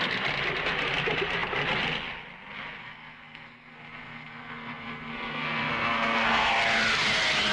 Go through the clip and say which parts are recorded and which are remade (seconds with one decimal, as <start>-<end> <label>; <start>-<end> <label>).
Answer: 0.0-2.8 recorded; 2.8-6.5 remade; 6.5-7.5 recorded